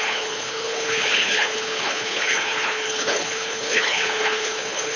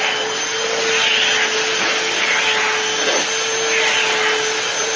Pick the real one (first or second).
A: second